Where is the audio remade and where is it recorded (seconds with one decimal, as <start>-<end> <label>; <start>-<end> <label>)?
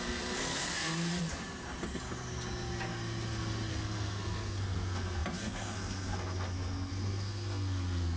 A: 0.0-1.1 remade; 1.1-3.7 recorded; 3.7-8.2 remade